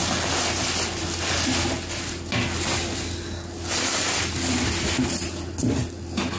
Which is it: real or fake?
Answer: real